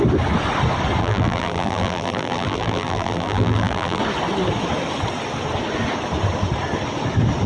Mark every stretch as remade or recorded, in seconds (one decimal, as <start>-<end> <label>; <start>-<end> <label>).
0.0-1.0 recorded; 1.0-4.0 remade; 4.0-7.5 recorded